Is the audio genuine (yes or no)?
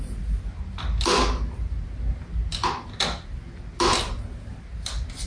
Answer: yes